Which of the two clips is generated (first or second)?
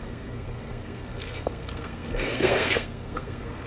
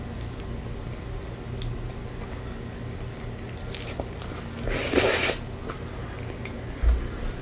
first